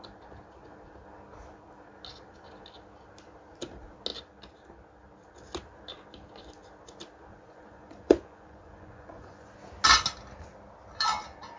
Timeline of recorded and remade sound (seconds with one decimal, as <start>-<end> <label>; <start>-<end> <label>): 0.0-7.3 recorded; 7.3-9.5 remade; 9.5-11.6 recorded